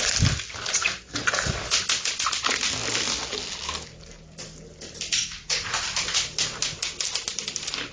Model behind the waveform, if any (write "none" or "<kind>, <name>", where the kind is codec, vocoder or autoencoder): none